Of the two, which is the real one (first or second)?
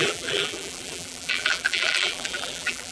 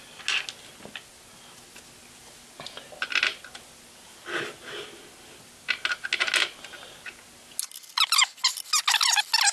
second